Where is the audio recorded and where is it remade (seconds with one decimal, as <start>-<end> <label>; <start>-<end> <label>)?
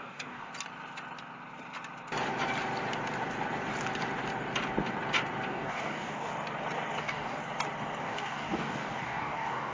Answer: 0.0-0.5 remade; 0.5-5.5 recorded; 5.5-6.3 remade; 6.3-7.0 recorded; 7.0-7.4 remade; 7.4-8.0 recorded; 8.0-9.7 remade